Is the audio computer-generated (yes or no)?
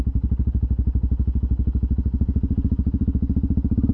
no